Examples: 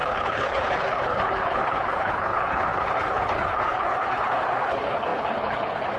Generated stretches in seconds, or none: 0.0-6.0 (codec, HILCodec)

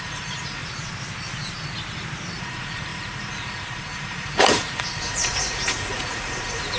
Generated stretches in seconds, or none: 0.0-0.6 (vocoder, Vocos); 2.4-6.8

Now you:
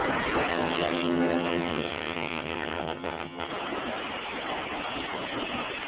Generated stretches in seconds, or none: 0.5-3.5 (vocoder, HiFi-GAN)

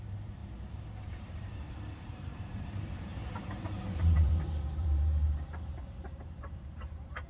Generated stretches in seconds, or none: 0.0-0.4 (vocoder, BigVGAN v2); 1.0-7.3